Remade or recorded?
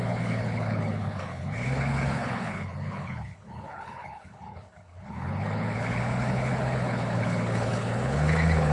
remade